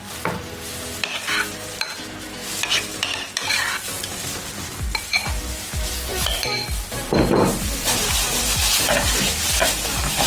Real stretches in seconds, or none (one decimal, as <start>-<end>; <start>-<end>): 0.0-6.1